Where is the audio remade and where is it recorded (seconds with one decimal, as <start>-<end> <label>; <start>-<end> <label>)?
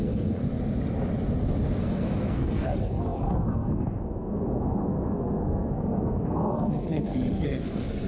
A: 0.0-0.4 remade; 0.4-1.8 recorded; 1.8-8.1 remade